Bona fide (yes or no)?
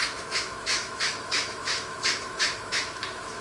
no